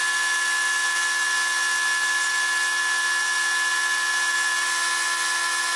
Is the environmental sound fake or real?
real